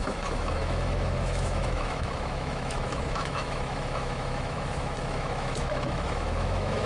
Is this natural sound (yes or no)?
no